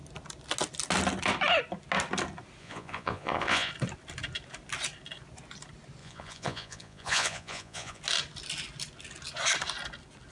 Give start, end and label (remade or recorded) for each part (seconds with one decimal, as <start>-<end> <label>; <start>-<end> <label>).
0.0-2.6 recorded; 2.6-3.7 remade; 3.7-6.0 recorded; 6.0-8.0 remade; 8.0-10.3 recorded